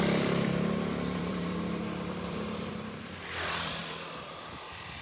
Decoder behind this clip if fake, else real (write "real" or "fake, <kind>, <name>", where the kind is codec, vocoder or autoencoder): fake, vocoder, BigVGAN v2